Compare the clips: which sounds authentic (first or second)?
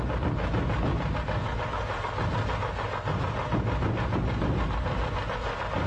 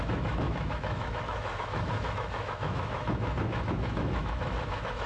first